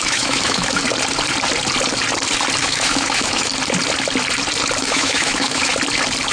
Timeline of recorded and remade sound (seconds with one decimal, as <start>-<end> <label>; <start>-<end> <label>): 0.0-0.8 remade; 0.8-2.6 recorded; 2.6-3.5 remade; 3.5-4.8 recorded; 4.8-5.7 remade; 5.7-6.3 recorded